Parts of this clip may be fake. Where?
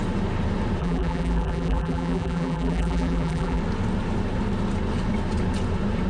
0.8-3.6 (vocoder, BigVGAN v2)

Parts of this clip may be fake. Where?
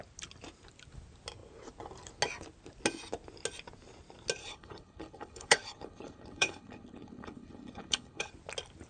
4.4-8.3 (codec, HILCodec)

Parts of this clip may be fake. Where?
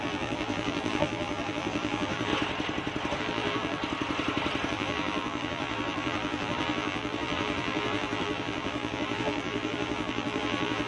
0.0-2.3 (vocoder, BigVGAN v2); 3.2-3.8; 4.7-10.9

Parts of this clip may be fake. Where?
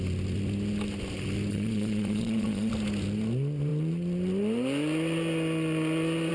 1.5-2.7 (vocoder, Vocos)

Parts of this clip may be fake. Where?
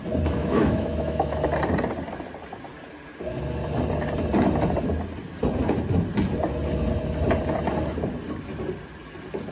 0.4-1.4 (autoencoder, DAC-VAE)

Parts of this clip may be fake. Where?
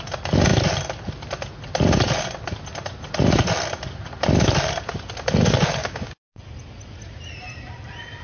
5.8-6.4 (codec, DAC)